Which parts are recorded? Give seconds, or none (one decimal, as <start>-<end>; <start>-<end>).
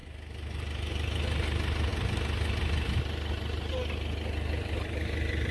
0.0-5.5